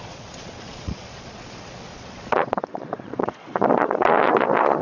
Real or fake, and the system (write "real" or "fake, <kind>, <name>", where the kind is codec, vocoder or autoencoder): fake, vocoder, Vocos